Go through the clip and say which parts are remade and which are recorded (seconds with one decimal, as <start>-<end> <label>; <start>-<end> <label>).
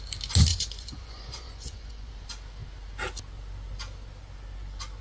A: 0.0-0.5 recorded; 0.5-2.1 remade; 2.1-5.0 recorded